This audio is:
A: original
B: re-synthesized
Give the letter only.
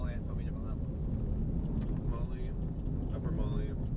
A